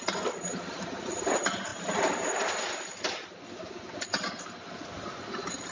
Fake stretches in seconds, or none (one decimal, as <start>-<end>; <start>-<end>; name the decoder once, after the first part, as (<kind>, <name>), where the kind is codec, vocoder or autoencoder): none